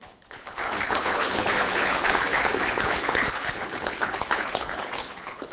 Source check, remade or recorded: remade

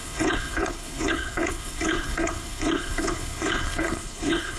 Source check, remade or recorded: remade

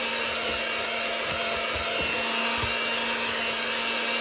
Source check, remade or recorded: recorded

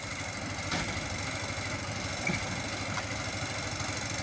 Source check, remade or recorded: recorded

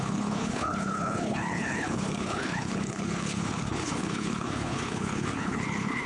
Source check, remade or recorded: remade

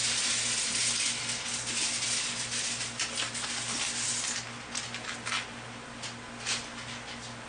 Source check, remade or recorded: recorded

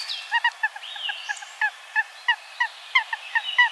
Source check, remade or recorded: recorded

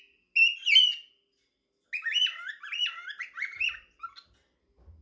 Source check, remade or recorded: recorded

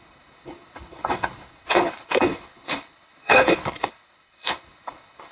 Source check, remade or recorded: remade